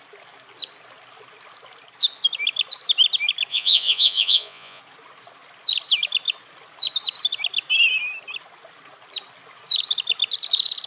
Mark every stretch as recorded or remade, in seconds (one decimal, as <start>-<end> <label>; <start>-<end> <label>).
0.0-3.5 recorded; 3.5-4.8 remade; 4.8-10.9 recorded